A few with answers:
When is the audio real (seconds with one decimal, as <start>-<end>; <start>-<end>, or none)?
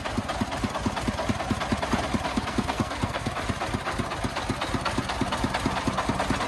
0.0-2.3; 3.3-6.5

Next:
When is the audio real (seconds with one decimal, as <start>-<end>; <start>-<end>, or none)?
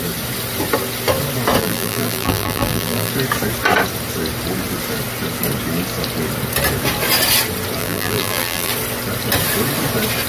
0.0-1.6; 3.1-7.8; 8.7-10.3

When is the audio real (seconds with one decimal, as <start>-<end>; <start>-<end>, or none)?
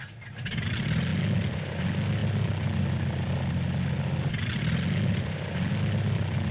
0.0-6.5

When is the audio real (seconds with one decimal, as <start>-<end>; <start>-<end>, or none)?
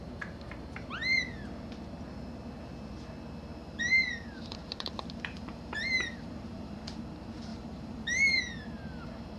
0.0-3.6; 7.0-7.5; 8.4-9.4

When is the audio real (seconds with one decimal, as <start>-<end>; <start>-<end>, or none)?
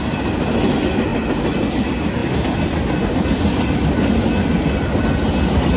0.0-5.8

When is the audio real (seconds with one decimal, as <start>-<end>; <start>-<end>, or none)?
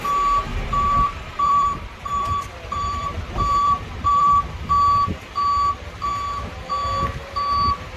0.0-0.5; 4.5-8.0